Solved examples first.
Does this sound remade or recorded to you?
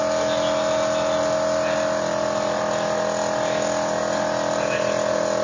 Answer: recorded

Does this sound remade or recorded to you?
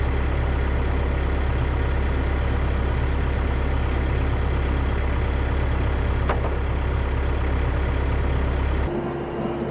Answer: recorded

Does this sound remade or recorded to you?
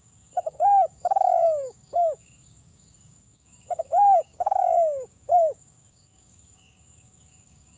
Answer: remade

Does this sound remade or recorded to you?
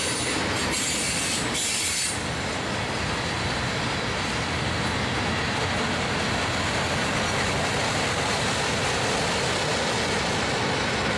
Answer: recorded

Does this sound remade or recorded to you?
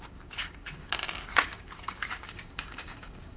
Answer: remade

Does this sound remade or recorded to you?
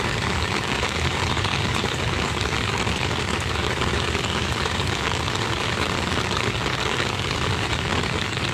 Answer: remade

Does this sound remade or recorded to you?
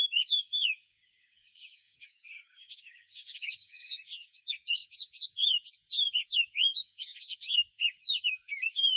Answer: remade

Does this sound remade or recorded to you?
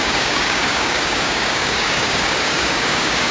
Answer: remade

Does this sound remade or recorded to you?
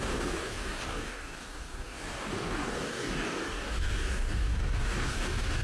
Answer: remade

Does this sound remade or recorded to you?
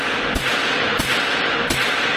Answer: recorded